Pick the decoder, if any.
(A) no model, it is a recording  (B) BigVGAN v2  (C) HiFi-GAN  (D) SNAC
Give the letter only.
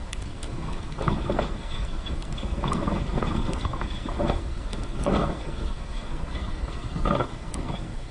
D